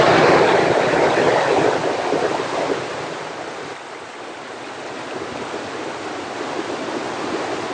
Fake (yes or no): no